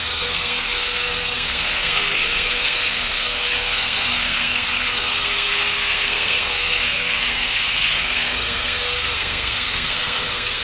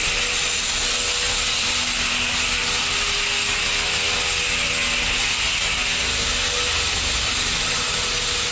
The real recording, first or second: second